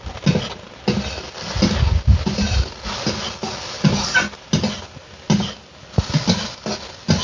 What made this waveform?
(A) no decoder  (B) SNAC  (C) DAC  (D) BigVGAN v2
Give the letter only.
A